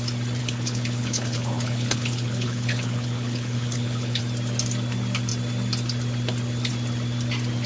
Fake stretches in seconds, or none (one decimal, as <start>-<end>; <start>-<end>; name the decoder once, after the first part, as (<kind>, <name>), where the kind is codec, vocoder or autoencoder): 0.4-4.2 (codec, HILCodec)